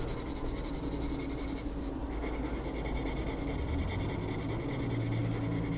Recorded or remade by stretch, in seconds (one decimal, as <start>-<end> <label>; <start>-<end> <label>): 0.0-5.8 recorded